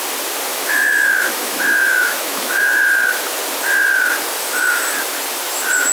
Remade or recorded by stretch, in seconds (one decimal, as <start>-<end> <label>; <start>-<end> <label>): 0.0-0.5 recorded; 0.5-2.8 remade; 2.8-5.9 recorded